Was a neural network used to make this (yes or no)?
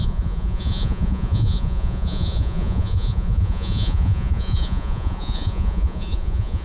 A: yes